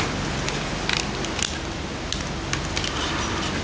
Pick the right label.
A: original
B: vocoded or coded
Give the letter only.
A